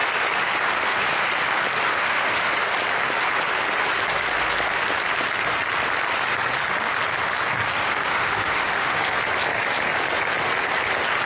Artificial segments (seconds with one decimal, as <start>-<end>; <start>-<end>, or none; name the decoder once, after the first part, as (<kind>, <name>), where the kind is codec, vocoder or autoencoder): 1.9-2.5 (autoencoder, DAC-VAE); 7.8-9.0